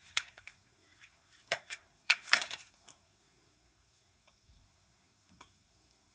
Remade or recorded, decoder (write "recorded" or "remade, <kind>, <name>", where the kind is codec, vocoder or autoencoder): remade, codec, SNAC